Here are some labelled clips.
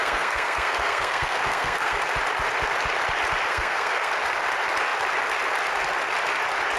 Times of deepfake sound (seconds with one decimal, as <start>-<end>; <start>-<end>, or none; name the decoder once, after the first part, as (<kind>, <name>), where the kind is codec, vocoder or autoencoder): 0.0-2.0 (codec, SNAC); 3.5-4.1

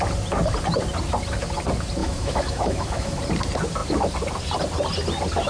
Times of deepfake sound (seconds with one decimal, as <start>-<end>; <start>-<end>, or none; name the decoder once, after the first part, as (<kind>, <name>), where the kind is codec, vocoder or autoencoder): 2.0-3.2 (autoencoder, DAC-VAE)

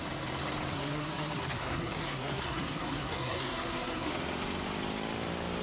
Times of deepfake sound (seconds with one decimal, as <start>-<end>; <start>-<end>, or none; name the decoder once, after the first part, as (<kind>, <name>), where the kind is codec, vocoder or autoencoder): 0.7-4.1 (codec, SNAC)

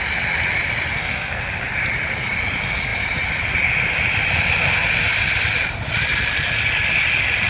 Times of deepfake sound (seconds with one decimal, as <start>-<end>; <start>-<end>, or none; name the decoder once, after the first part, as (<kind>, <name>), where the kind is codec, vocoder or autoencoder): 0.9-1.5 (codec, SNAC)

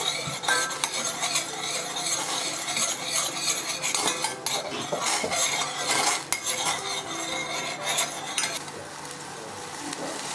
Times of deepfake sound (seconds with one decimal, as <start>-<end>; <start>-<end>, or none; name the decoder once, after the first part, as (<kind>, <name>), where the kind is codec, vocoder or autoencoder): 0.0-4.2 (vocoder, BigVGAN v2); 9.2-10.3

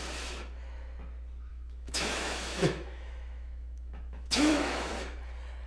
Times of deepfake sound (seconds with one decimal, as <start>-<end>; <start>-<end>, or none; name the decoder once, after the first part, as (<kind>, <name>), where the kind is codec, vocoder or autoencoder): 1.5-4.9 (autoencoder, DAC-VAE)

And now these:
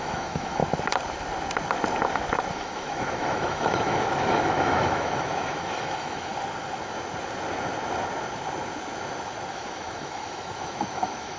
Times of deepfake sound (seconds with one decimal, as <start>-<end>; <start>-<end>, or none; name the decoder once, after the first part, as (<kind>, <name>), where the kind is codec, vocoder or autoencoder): 0.0-0.6 (autoencoder, DAC-VAE); 2.5-6.3; 9.5-11.4